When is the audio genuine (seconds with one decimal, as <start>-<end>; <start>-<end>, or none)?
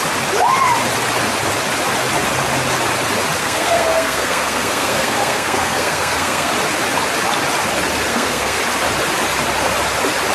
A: 0.0-3.4; 6.5-8.1; 8.6-10.3